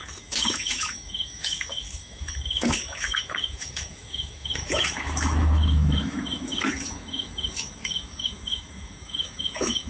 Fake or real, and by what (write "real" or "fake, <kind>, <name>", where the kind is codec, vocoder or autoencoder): fake, autoencoder, DAC-VAE